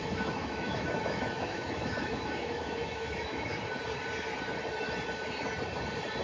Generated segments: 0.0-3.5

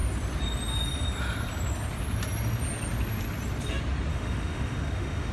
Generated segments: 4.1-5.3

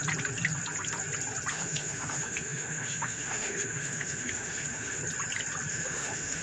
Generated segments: 1.5-5.0; 5.7-6.4